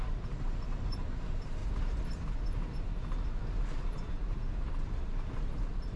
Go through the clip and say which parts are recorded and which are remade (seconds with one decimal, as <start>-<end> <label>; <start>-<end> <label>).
0.0-1.6 remade; 1.6-4.5 recorded; 4.5-6.0 remade